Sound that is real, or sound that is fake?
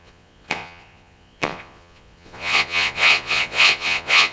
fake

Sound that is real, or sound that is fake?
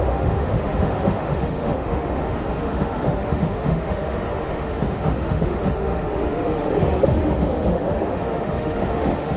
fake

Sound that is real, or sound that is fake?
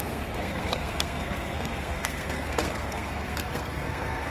fake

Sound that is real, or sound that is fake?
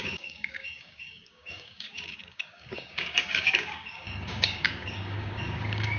fake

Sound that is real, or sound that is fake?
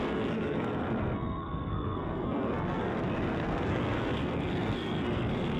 fake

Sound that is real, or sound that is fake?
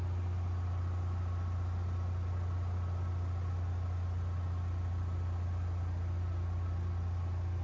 real